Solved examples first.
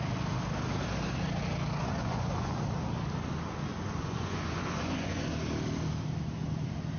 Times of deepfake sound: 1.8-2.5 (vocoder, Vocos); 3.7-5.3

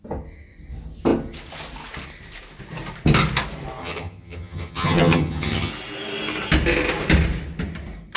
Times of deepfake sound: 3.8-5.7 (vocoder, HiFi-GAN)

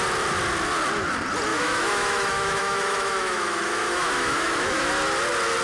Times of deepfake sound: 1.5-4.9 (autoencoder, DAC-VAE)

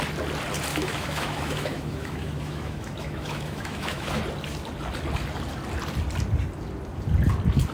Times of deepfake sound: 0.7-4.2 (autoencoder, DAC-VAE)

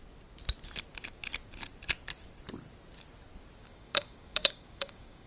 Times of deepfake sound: 3.6-5.3 (codec, DAC)